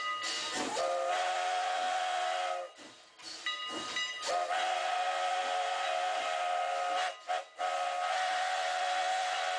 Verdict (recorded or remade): recorded